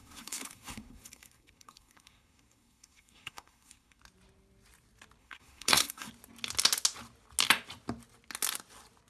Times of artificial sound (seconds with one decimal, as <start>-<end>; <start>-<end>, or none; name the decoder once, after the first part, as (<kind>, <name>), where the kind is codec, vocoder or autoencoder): 0.0-4.0 (codec, SNAC); 5.2-6.1